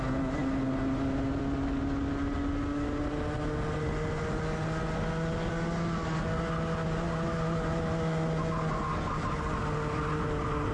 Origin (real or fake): real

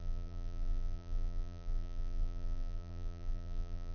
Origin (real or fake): fake